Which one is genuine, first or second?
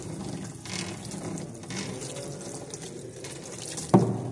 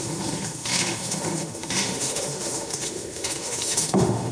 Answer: first